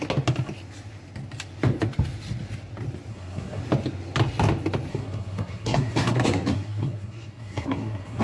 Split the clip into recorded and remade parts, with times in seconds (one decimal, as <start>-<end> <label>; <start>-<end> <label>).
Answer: 0.0-3.1 recorded; 3.1-3.6 remade; 3.6-4.9 recorded; 4.9-8.2 remade